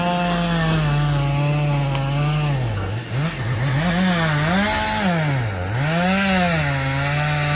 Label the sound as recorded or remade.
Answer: recorded